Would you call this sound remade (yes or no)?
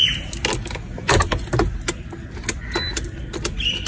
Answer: no